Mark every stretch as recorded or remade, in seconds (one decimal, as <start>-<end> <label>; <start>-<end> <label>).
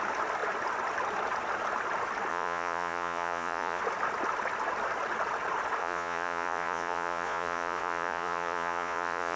0.0-2.3 recorded; 2.3-3.8 remade; 3.8-5.8 recorded; 5.8-9.4 remade